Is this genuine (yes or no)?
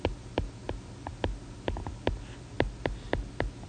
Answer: yes